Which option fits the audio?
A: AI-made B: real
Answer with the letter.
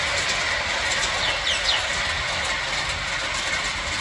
B